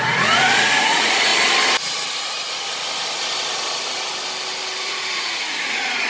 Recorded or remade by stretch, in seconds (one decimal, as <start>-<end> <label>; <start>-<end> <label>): 0.0-1.3 remade; 1.3-4.8 recorded; 4.8-6.1 remade